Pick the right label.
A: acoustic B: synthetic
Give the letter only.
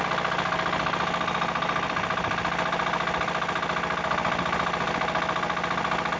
A